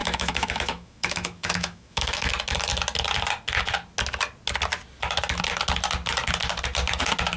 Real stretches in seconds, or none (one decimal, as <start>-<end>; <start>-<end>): 2.3-7.4